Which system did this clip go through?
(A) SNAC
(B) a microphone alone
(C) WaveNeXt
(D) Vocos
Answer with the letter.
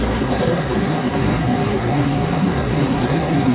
A